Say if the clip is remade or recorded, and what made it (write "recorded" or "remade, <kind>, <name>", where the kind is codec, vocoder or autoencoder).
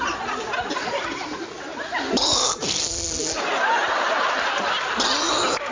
recorded